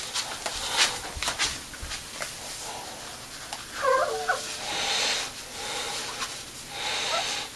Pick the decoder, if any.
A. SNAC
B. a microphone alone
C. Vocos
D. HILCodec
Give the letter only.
B